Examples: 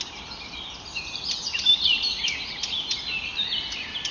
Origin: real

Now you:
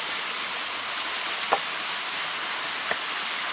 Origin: real